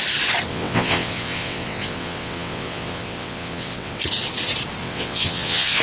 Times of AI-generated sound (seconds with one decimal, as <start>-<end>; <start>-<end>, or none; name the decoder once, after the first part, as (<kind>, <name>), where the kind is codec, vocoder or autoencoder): 0.5-4.0 (vocoder, WaveNeXt); 4.8-5.8